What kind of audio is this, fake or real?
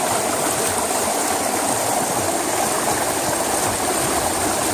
real